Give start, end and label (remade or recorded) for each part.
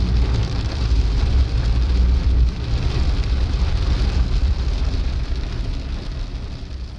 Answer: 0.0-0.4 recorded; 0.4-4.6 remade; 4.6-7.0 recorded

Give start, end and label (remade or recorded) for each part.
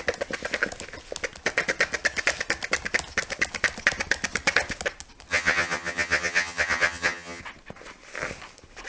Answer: 0.0-5.3 recorded; 5.3-7.4 remade; 7.4-8.9 recorded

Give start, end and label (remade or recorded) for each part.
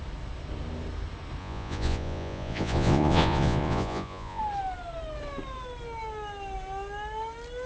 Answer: 0.0-1.4 recorded; 1.4-4.4 remade; 4.4-7.7 recorded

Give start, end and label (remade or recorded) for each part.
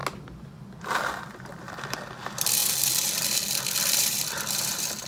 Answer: 0.0-0.8 recorded; 0.8-2.6 remade; 2.6-3.6 recorded; 3.6-5.1 remade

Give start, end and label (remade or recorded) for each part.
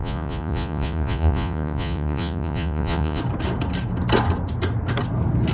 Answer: 0.0-3.2 remade; 3.2-5.5 recorded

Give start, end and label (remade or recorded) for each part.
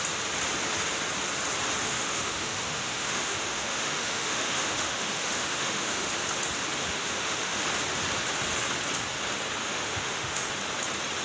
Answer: 0.0-1.8 recorded; 1.8-6.1 remade; 6.1-6.8 recorded; 6.8-7.6 remade; 7.6-9.6 recorded; 9.6-10.5 remade; 10.5-11.2 recorded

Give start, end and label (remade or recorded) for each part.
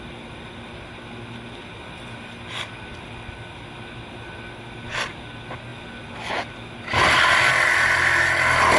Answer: 0.0-8.8 recorded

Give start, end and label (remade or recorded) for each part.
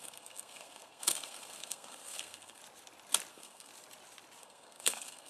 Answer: 0.0-2.6 remade; 2.6-3.3 recorded; 3.3-3.7 remade; 3.7-4.4 recorded; 4.4-5.3 remade